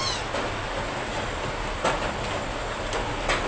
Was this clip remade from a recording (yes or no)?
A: no